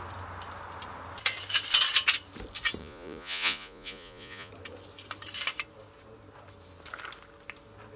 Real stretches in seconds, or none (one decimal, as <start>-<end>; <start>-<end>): 0.0-2.8; 4.5-8.0

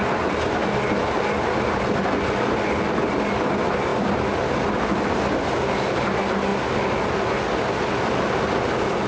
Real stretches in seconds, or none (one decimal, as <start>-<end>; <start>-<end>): 0.0-9.1

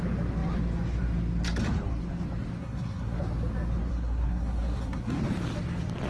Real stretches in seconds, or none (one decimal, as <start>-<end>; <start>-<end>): 0.0-2.6; 3.2-3.9; 5.2-6.1